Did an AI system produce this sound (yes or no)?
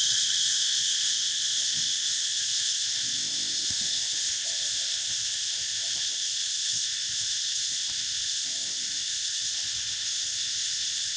yes